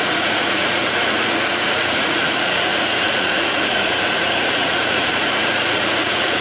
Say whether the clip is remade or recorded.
remade